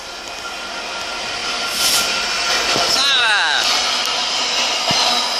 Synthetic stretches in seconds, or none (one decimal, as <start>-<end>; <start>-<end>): none